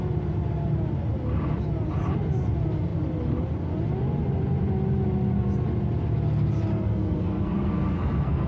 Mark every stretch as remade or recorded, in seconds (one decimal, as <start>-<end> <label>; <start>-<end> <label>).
0.0-6.7 recorded; 6.7-8.5 remade